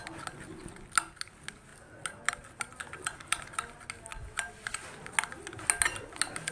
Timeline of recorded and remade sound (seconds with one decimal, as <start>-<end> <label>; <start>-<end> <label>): 0.0-6.5 recorded